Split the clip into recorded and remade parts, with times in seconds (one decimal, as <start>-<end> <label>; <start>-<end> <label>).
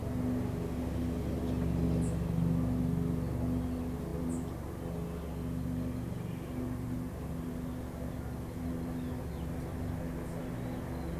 0.0-11.2 recorded